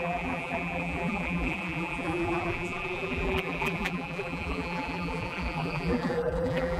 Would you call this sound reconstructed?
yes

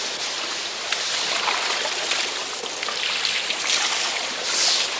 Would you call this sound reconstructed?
yes